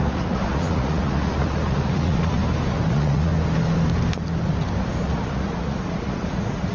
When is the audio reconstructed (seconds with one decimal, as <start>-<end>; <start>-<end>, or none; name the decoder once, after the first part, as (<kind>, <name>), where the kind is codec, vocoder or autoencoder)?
0.0-2.4 (vocoder, Vocos); 2.9-3.3; 5.0-6.7